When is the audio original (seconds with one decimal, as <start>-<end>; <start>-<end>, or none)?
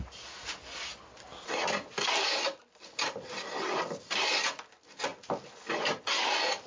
0.0-6.7